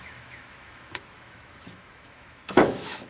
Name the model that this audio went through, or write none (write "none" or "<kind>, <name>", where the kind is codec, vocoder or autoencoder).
autoencoder, DAC-VAE